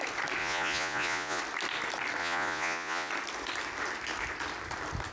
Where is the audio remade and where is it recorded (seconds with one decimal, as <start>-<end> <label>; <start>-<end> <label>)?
0.0-0.4 recorded; 0.4-1.4 remade; 1.4-2.2 recorded; 2.2-3.1 remade; 3.1-5.1 recorded